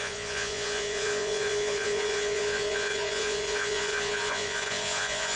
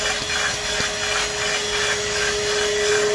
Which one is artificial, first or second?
first